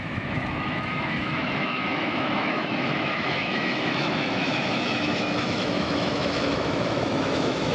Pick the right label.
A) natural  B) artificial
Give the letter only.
B